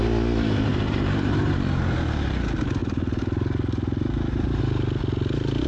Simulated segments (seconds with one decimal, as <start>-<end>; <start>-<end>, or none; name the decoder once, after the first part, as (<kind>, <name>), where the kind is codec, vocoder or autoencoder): 0.7-1.8 (vocoder, BigVGAN v2); 2.8-4.6